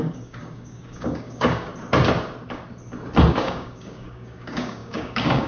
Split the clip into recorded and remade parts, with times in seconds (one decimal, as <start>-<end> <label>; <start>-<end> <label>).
0.0-1.7 remade; 1.7-3.3 recorded; 3.3-5.5 remade

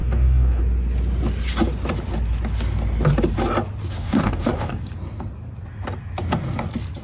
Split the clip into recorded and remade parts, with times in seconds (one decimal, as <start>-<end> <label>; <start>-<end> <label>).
0.0-0.6 remade; 0.6-4.0 recorded; 4.0-4.8 remade; 4.8-7.0 recorded

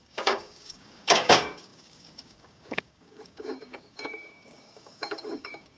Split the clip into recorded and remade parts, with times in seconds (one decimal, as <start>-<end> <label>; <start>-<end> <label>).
0.0-5.8 remade

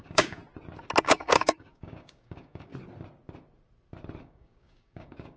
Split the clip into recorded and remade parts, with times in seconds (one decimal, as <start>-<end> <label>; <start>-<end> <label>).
0.0-0.4 remade; 0.4-1.0 recorded; 1.0-2.7 remade; 2.7-4.2 recorded; 4.2-5.4 remade

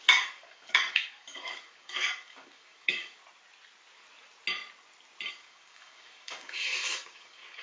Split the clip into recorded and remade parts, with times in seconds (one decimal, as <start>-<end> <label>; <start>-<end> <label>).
0.0-3.2 remade; 3.2-5.3 recorded; 5.3-7.6 remade

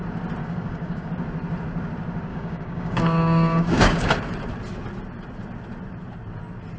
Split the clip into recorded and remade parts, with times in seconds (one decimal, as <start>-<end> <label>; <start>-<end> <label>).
0.0-0.4 recorded; 0.4-1.1 remade; 1.1-2.3 recorded; 2.3-4.1 remade; 4.1-6.8 recorded

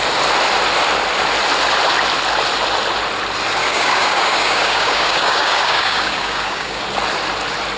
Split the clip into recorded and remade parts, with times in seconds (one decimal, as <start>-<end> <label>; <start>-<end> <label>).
0.0-3.6 recorded; 3.6-6.8 remade; 6.8-7.8 recorded